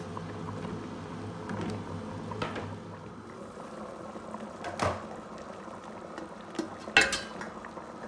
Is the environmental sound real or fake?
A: real